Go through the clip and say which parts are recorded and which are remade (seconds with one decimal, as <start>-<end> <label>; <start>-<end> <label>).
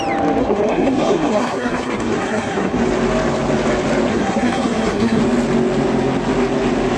0.0-0.4 recorded; 0.4-2.8 remade; 2.8-4.1 recorded; 4.1-5.2 remade; 5.2-7.0 recorded